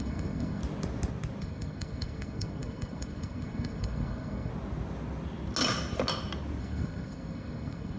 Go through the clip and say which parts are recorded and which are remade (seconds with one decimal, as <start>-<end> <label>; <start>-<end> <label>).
0.0-0.6 remade; 0.6-1.4 recorded; 1.4-4.5 remade; 4.5-6.6 recorded; 6.6-8.0 remade